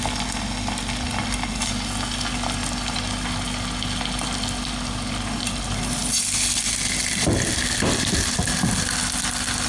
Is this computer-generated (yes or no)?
no